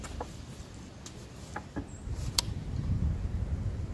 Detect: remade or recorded recorded